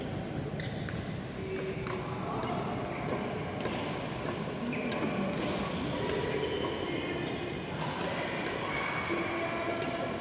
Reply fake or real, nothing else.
real